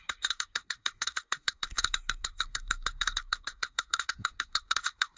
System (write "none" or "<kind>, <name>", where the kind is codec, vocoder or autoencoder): codec, SNAC